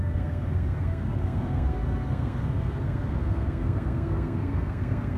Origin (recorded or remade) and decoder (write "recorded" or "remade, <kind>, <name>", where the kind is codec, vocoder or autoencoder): remade, codec, SNAC